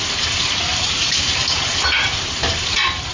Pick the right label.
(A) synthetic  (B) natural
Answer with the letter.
B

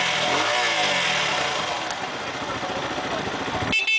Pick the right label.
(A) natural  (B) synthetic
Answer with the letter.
A